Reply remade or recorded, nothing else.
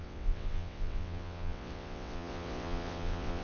remade